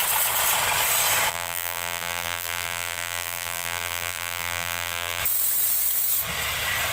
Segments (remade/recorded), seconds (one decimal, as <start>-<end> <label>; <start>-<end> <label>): 0.0-1.3 recorded; 1.3-5.2 remade; 5.2-6.9 recorded